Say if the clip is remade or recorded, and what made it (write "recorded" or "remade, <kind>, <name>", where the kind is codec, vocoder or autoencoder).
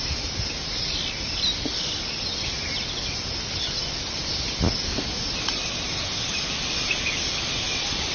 recorded